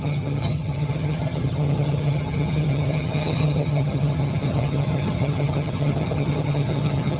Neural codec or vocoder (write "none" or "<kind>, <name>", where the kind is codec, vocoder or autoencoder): vocoder, HiFi-GAN